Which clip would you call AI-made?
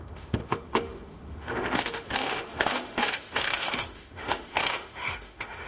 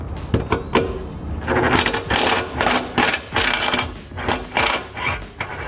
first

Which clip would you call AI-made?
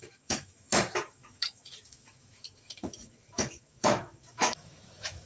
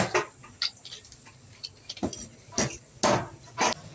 first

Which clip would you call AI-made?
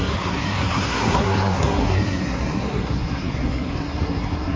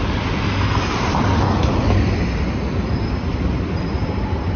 first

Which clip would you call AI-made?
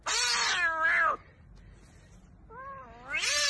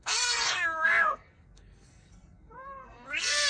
second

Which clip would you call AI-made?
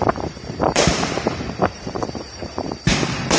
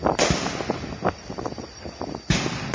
first